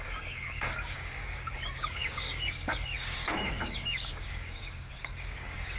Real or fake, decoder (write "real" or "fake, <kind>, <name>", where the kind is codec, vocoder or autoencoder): fake, codec, DAC